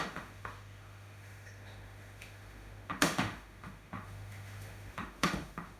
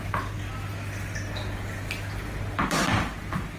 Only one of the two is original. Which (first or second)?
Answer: second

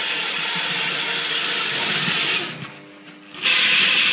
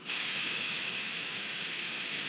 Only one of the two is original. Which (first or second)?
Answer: first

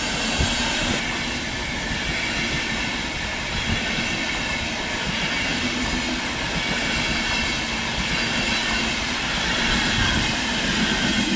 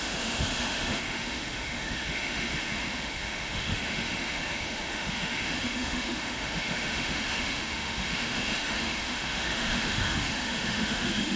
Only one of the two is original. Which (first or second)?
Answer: first